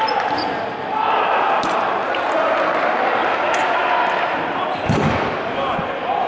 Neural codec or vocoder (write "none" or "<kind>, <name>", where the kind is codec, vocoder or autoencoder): none